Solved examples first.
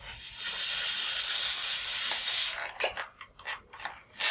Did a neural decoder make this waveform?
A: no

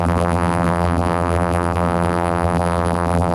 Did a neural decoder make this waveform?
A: yes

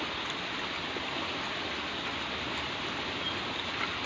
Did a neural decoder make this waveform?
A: no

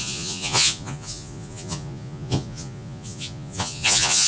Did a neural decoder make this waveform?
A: yes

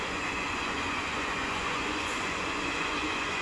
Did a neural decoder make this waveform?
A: yes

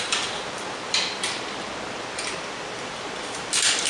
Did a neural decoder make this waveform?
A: yes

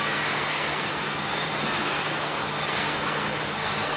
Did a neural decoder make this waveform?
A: yes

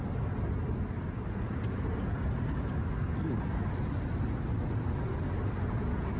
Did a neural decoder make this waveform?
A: no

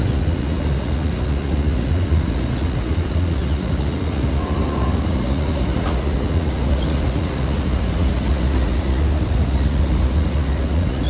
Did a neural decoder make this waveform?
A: yes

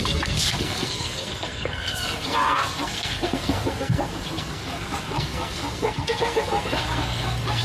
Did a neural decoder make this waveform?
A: yes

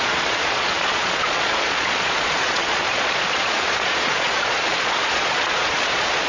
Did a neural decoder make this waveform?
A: yes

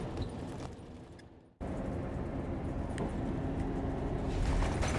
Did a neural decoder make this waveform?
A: no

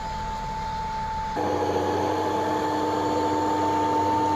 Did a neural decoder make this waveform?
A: no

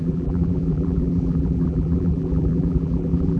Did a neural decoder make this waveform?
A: yes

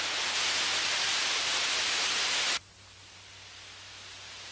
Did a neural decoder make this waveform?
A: no